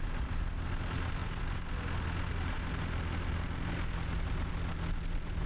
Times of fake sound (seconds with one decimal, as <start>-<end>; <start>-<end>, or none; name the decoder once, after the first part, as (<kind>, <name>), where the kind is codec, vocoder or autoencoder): none